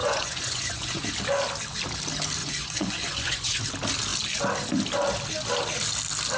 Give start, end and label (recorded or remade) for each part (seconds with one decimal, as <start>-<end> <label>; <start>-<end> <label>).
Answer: 0.0-1.1 remade; 1.1-2.4 recorded; 2.4-3.6 remade; 3.6-6.4 recorded